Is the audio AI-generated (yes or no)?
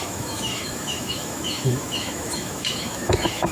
yes